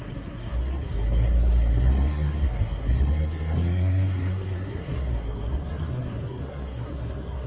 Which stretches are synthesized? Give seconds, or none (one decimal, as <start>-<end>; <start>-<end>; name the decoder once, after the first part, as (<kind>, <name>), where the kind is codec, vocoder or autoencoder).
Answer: 0.0-7.5 (codec, SNAC)